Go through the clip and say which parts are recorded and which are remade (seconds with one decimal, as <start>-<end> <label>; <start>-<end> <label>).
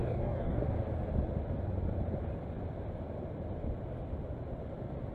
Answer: 0.0-0.6 remade; 0.6-5.1 recorded